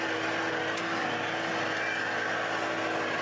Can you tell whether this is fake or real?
real